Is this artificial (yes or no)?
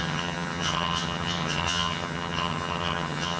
yes